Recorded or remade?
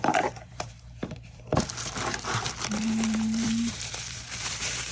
remade